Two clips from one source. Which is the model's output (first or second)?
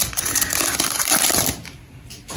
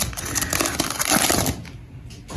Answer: first